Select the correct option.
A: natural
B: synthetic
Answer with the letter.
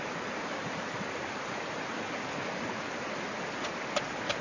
A